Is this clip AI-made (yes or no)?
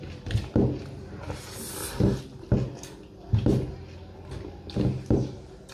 no